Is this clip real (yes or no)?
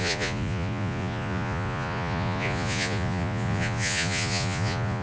no